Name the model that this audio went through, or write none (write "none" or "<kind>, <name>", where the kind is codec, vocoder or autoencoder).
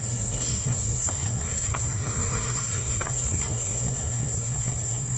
codec, SNAC